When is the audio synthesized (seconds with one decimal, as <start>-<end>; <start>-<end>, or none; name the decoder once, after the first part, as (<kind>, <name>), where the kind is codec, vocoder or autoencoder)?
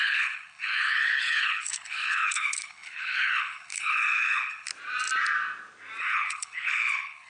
0.0-4.7 (codec, HILCodec); 6.0-7.3